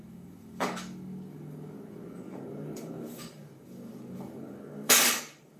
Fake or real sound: fake